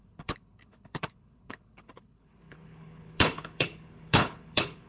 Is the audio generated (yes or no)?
yes